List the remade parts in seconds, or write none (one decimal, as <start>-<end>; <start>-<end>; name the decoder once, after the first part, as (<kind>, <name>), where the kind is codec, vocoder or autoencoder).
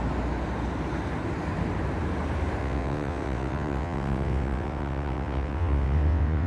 2.6-6.5 (vocoder, WaveNeXt)